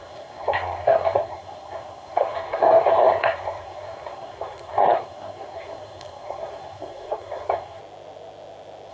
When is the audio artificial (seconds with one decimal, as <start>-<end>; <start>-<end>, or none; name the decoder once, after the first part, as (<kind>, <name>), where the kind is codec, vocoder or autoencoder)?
0.0-7.8 (codec, SNAC)